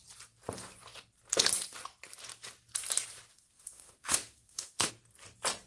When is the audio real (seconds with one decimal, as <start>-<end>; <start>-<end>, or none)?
0.0-3.3; 4.9-5.7